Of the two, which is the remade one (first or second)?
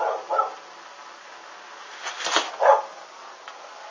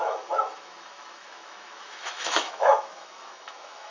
second